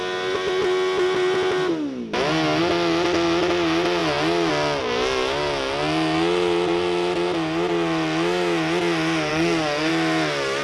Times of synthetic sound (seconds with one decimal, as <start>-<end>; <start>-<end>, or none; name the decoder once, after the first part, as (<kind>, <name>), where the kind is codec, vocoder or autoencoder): 9.3-9.9 (codec, SNAC)